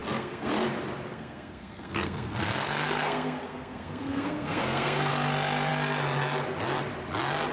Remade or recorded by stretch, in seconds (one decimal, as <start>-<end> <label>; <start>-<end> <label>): 0.0-0.5 remade; 0.5-1.1 recorded; 1.1-5.1 remade; 5.1-7.5 recorded